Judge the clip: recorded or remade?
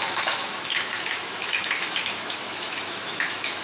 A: remade